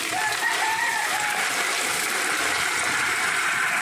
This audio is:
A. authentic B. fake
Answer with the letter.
B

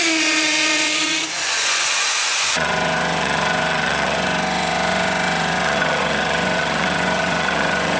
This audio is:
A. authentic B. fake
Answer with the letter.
B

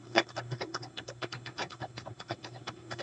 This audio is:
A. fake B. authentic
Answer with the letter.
A